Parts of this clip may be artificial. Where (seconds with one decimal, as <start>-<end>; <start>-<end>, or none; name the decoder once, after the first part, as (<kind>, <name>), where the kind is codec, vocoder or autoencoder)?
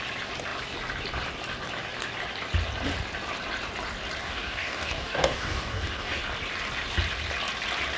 4.2-6.2 (codec, DAC)